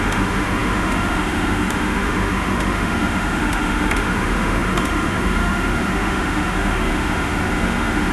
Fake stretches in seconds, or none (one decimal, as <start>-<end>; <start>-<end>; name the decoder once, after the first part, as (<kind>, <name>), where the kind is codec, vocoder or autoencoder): 0.0-8.1 (autoencoder, DAC-VAE)